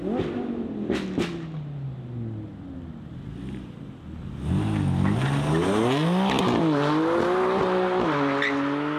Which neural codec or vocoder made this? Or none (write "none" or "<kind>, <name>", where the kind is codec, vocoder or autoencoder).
none